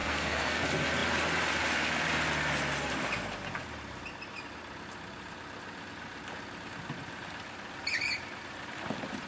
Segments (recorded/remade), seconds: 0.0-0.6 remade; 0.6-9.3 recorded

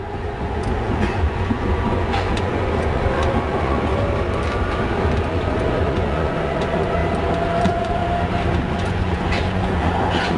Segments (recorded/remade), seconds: 0.0-3.9 remade; 3.9-5.3 recorded; 5.3-7.0 remade; 7.0-7.6 recorded; 7.6-8.0 remade; 8.0-8.6 recorded; 8.6-10.4 remade

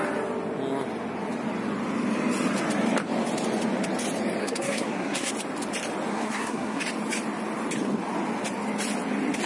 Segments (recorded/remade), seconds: 0.0-4.4 recorded; 4.4-5.3 remade; 5.3-6.1 recorded; 6.1-6.8 remade; 6.8-9.5 recorded

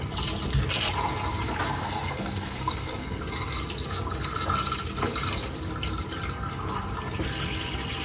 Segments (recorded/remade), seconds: 0.0-1.8 recorded; 1.8-3.2 remade; 3.2-8.0 recorded